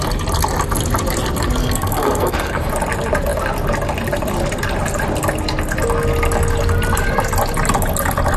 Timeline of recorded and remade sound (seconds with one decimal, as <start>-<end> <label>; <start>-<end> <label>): 0.0-1.6 recorded; 1.6-2.7 remade; 2.7-8.4 recorded